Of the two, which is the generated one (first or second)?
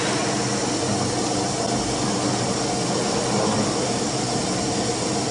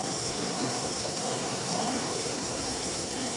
second